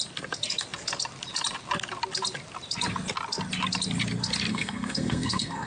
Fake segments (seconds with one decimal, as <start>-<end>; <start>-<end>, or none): 4.5-5.7